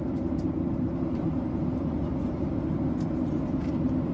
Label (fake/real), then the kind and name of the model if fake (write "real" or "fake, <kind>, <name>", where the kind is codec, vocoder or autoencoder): real